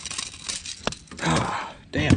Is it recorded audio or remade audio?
recorded